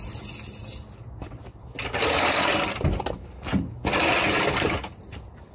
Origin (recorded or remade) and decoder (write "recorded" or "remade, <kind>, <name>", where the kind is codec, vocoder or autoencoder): recorded